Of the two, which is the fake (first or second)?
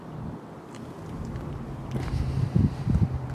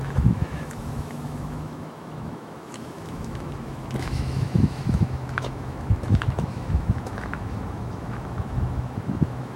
second